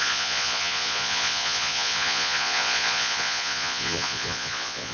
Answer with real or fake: fake